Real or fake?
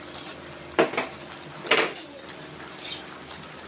real